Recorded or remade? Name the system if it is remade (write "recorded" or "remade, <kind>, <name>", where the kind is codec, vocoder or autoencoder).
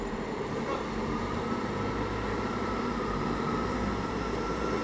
remade, vocoder, BigVGAN v2